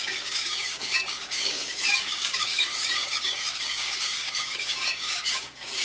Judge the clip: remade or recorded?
remade